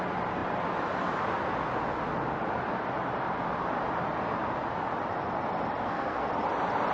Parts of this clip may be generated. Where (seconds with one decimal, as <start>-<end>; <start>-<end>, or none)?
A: 5.8-6.3